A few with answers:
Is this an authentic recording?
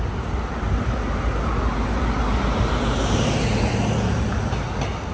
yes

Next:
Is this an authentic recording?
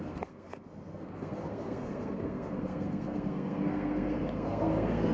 no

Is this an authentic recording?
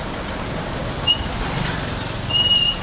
yes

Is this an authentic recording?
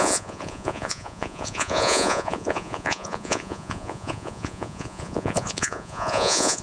no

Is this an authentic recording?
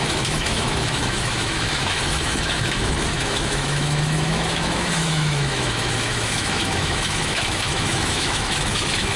no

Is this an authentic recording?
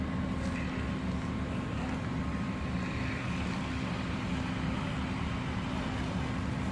yes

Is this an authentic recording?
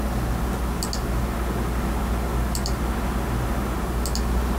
yes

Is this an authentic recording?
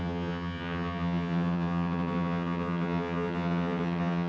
no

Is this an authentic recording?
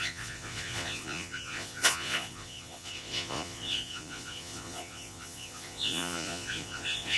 no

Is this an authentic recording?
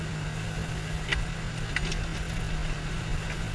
yes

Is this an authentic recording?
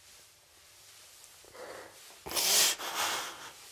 yes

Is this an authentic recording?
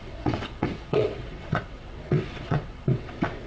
no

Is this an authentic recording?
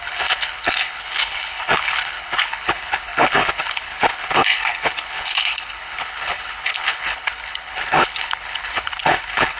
no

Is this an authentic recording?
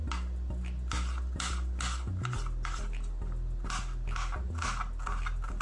yes